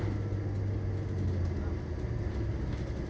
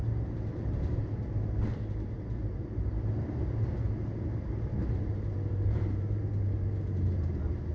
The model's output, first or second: second